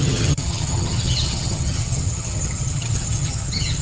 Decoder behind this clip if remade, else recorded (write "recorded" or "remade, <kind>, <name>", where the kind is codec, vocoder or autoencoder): remade, vocoder, HiFi-GAN